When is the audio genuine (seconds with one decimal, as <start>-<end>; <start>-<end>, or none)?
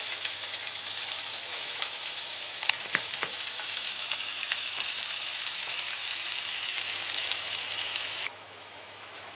none